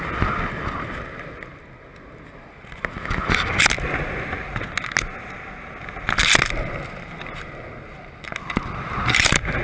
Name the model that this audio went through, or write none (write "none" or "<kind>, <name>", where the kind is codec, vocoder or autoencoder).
none